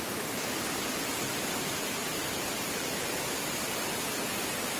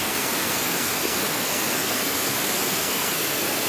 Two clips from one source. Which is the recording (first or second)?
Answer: first